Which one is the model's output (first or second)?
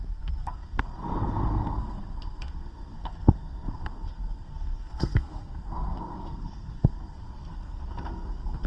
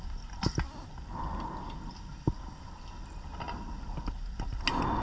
first